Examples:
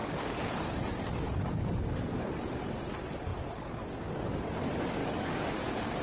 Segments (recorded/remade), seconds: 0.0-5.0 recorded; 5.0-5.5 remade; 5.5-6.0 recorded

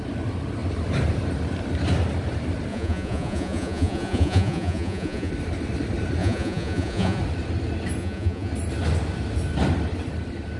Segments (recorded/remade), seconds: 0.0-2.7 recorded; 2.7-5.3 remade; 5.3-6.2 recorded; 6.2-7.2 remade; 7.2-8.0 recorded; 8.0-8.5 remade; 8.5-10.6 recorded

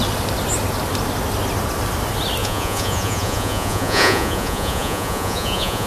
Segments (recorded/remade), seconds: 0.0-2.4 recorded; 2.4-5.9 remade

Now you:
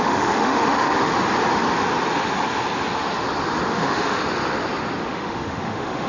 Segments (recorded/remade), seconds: 0.0-1.1 remade; 1.1-3.7 recorded; 3.7-4.2 remade; 4.2-5.0 recorded; 5.0-6.1 remade

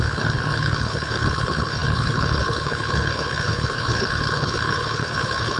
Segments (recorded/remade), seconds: 0.0-5.6 remade

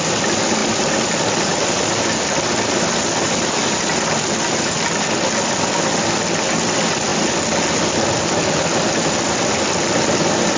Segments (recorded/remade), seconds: 0.0-10.6 recorded